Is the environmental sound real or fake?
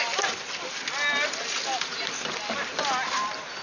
real